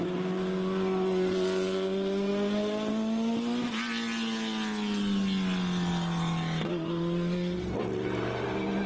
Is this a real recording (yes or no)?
yes